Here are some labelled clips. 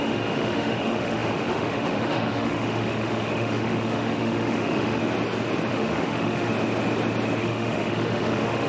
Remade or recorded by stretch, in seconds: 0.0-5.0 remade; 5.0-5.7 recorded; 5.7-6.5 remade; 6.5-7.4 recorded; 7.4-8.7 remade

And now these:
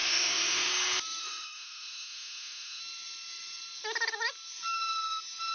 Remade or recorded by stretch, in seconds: 0.0-0.7 remade; 0.7-1.2 recorded; 1.2-2.8 remade; 2.8-5.5 recorded

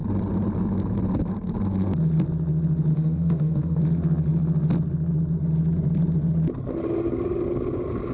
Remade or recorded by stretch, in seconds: 0.0-2.9 recorded; 2.9-3.8 remade; 3.8-8.1 recorded

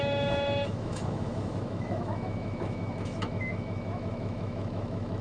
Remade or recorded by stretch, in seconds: 0.0-5.2 remade

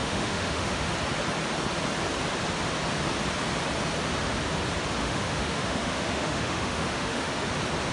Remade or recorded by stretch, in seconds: 0.0-0.9 remade; 0.9-5.0 recorded; 5.0-7.3 remade; 7.3-7.9 recorded

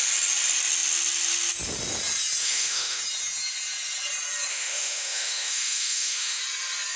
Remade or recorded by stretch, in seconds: 0.0-2.4 recorded; 2.4-3.0 remade; 3.0-4.5 recorded; 4.5-6.4 remade; 6.4-7.0 recorded